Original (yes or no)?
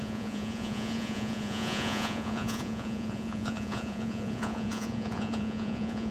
no